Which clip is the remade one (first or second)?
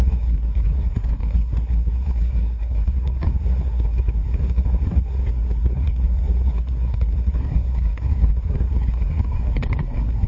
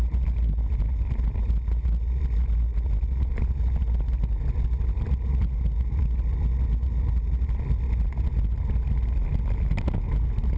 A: first